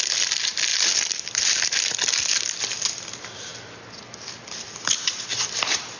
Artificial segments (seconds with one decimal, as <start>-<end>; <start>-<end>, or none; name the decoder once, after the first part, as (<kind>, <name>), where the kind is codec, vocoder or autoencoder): 0.0-0.7 (vocoder, BigVGAN v2); 1.3-3.5; 4.1-6.0